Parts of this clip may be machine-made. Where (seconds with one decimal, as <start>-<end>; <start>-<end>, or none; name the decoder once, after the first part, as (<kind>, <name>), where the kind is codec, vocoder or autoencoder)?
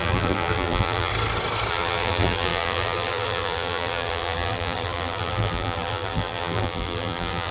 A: 0.0-1.1 (vocoder, BigVGAN v2); 1.7-7.5